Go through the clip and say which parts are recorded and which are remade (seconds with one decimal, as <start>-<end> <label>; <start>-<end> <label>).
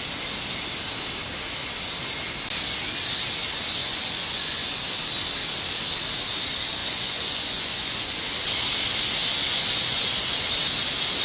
0.0-3.8 recorded; 3.8-4.8 remade; 4.8-6.8 recorded; 6.8-8.2 remade; 8.2-9.4 recorded; 9.4-10.5 remade; 10.5-11.2 recorded